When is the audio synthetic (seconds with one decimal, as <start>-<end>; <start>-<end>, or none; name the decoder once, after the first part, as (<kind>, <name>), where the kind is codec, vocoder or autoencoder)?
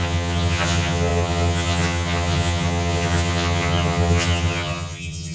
0.0-5.3 (vocoder, HiFi-GAN)